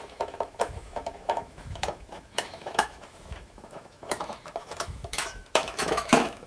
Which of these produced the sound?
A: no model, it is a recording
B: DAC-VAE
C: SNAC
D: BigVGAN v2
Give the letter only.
B